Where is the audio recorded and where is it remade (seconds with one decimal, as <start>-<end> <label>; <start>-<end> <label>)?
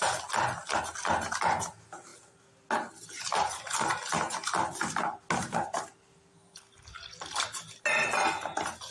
0.0-8.9 recorded